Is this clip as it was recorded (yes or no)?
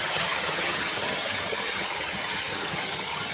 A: no